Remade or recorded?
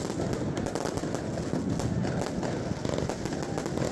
recorded